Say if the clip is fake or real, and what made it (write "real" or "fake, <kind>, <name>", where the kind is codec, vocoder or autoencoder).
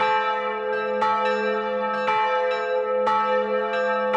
real